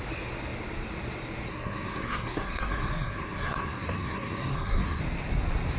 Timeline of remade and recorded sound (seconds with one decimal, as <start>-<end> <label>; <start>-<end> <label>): 0.0-1.5 recorded; 1.5-5.0 remade; 5.0-5.8 recorded

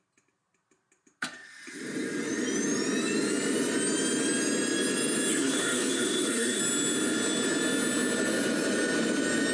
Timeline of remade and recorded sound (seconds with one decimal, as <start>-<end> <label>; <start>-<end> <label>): 0.0-5.3 recorded; 5.3-6.6 remade; 6.6-9.5 recorded